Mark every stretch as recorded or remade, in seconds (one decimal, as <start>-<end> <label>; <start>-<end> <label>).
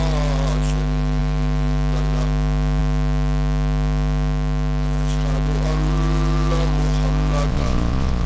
0.0-7.5 recorded; 7.5-8.3 remade